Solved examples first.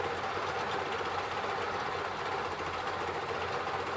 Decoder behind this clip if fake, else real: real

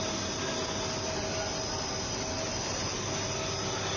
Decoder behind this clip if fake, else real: real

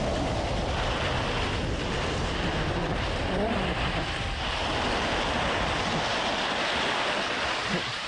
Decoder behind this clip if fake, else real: real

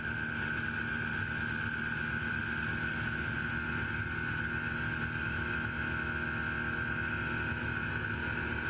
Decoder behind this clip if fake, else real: real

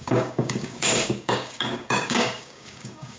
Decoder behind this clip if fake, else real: fake, codec, DAC